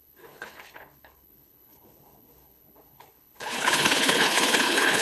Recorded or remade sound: remade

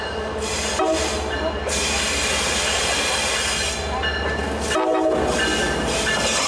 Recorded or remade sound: recorded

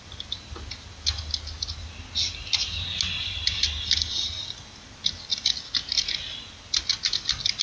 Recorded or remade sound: recorded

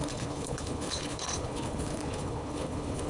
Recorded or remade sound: remade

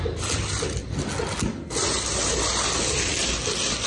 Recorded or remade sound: recorded